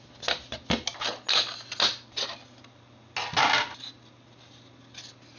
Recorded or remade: recorded